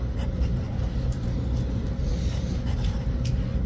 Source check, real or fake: real